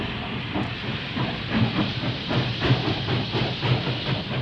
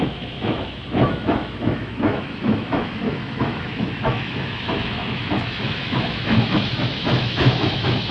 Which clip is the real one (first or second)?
first